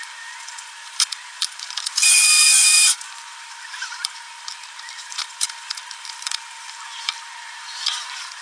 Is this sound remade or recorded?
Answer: remade